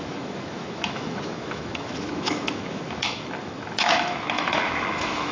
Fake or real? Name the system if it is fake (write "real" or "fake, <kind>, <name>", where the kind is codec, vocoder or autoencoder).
fake, autoencoder, DAC-VAE